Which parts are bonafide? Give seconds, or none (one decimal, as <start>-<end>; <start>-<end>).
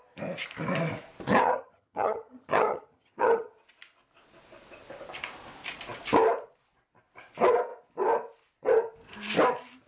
0.0-1.4; 3.5-9.9